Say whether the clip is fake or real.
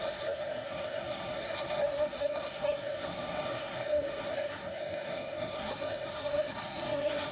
fake